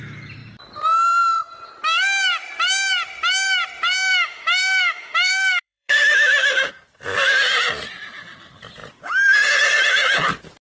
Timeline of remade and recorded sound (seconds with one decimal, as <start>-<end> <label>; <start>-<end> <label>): 0.0-4.1 recorded; 4.1-6.7 remade; 6.7-10.8 recorded